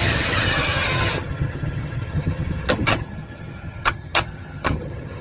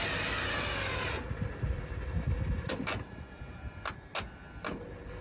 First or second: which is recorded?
second